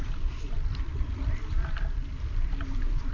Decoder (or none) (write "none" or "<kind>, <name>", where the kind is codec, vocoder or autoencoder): vocoder, BigVGAN v2